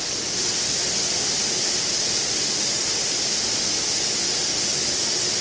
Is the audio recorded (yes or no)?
yes